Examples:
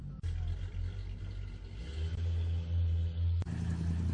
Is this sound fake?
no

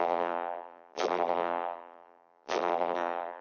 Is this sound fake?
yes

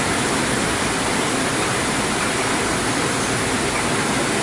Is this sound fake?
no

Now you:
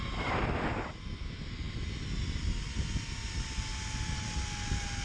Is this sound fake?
no